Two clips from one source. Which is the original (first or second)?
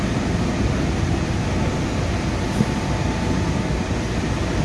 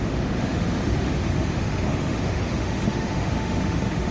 first